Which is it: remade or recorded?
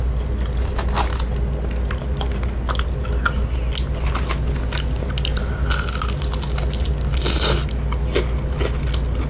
recorded